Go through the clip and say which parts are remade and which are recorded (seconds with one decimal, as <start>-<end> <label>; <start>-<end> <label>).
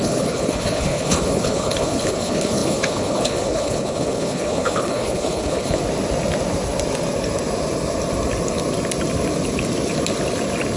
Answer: 0.0-5.8 remade; 5.8-10.8 recorded